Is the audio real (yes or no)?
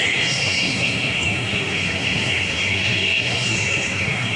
no